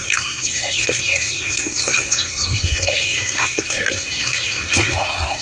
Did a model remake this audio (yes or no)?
yes